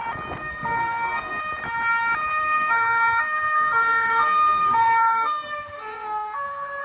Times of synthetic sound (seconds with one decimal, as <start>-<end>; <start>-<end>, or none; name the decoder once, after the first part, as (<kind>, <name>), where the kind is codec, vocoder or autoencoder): 0.4-1.4 (codec, SNAC); 2.4-6.8